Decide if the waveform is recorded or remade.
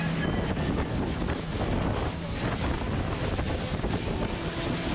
recorded